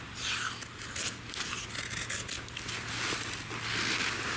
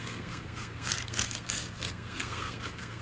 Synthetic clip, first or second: second